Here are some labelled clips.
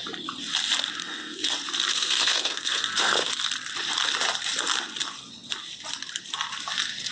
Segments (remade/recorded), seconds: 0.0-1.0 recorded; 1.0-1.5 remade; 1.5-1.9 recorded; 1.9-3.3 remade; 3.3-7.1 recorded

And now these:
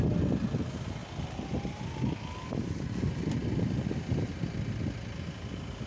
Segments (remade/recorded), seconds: 0.0-5.9 recorded

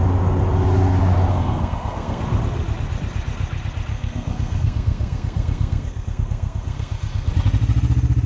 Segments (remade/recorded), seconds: 0.0-1.3 recorded; 1.3-2.2 remade; 2.2-3.9 recorded; 3.9-7.3 remade; 7.3-8.3 recorded

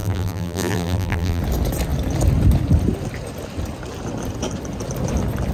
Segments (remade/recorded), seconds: 0.0-1.4 remade; 1.4-5.5 recorded

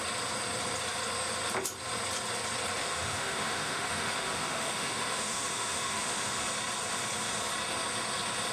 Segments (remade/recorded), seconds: 0.0-2.8 recorded; 2.8-6.4 remade; 6.4-8.5 recorded

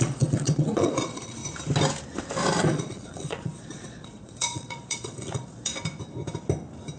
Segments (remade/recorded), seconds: 0.0-1.4 remade; 1.4-2.6 recorded; 2.6-5.7 remade; 5.7-7.0 recorded

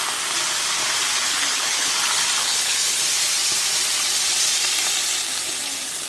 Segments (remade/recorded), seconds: 0.0-1.3 recorded; 1.3-1.9 remade; 1.9-2.4 recorded; 2.4-3.0 remade; 3.0-6.1 recorded